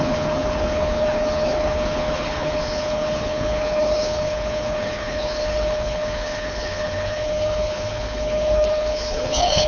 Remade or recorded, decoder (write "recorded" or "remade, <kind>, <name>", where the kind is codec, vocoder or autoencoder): remade, codec, HILCodec